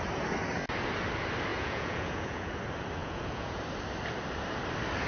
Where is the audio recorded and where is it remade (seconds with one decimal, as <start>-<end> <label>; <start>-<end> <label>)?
0.0-1.5 recorded; 1.5-2.5 remade; 2.5-3.0 recorded; 3.0-3.6 remade; 3.6-5.1 recorded